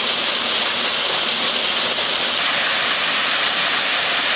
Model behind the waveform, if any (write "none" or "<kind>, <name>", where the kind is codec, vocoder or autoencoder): none